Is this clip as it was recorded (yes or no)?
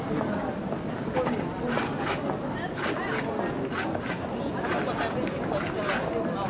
yes